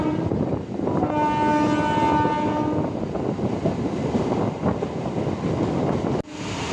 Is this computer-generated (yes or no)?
no